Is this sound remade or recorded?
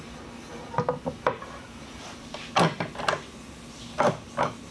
recorded